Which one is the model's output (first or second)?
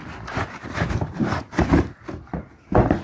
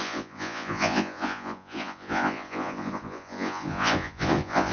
second